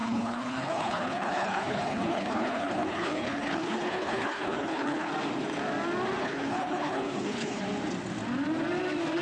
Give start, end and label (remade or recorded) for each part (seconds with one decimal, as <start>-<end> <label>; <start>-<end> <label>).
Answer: 0.0-5.1 remade; 5.1-6.2 recorded; 6.2-7.6 remade; 7.6-9.2 recorded